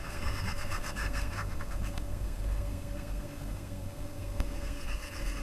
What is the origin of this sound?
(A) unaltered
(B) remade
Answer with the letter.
B